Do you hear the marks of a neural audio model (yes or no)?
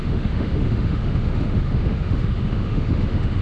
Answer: yes